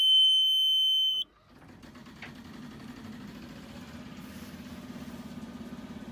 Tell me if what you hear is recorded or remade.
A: recorded